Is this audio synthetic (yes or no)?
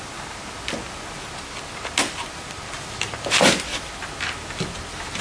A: no